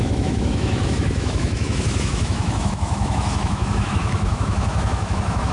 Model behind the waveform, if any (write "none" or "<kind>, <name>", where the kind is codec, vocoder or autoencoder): autoencoder, DAC-VAE